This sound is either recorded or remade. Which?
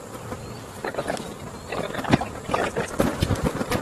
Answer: recorded